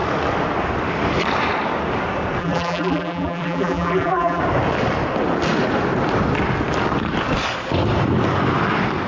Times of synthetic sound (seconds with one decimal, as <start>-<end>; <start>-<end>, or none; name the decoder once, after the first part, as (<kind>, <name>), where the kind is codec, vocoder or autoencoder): 2.4-4.4 (vocoder, BigVGAN v2)